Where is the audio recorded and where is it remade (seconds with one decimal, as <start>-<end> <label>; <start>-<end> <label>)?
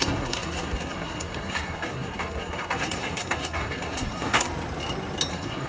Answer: 0.0-4.5 remade; 4.5-5.3 recorded; 5.3-5.7 remade